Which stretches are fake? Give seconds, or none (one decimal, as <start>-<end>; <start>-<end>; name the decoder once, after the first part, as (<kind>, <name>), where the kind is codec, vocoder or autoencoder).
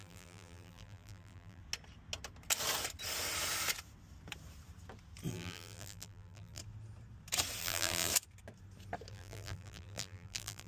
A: 0.0-1.6 (vocoder, BigVGAN v2); 5.3-6.6; 7.6-8.1; 9.1-10.7